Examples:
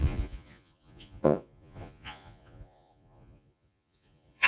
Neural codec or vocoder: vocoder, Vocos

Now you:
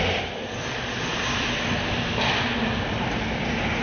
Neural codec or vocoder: none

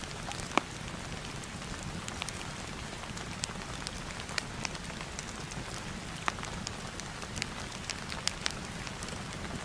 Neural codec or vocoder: none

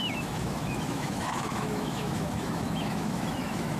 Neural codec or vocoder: autoencoder, DAC-VAE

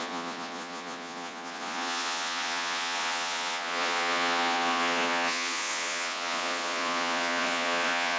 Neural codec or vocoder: vocoder, Vocos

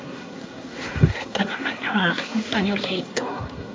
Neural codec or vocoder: codec, SNAC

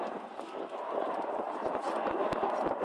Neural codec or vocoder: vocoder, BigVGAN v2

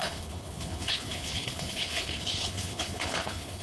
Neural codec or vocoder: codec, HILCodec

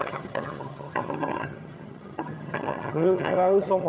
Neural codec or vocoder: vocoder, HiFi-GAN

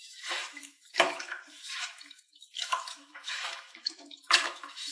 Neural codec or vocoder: autoencoder, DAC-VAE